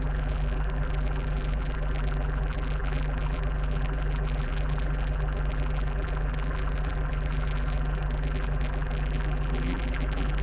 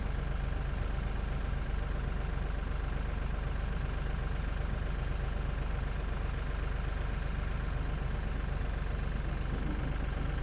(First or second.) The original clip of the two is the second